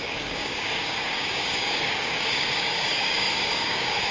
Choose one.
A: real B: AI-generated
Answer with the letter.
B